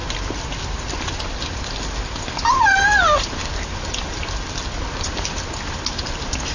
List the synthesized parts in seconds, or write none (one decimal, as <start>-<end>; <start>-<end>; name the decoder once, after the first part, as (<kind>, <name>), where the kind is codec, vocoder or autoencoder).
none